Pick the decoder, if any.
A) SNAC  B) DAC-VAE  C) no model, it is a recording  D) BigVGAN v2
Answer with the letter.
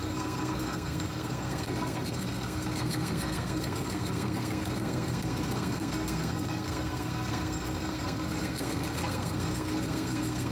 A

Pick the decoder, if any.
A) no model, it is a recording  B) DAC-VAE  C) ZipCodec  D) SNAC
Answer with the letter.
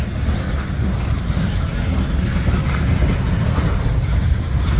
A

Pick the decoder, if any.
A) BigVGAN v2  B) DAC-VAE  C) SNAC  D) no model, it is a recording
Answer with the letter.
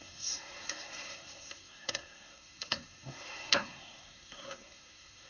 C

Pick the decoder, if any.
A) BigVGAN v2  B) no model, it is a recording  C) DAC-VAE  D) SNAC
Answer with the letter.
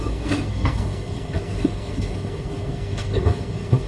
D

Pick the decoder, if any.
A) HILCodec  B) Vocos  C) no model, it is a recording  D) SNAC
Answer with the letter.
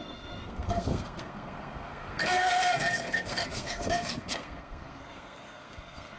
D